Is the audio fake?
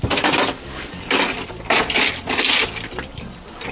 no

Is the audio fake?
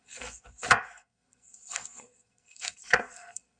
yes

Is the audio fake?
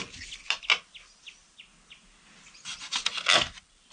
no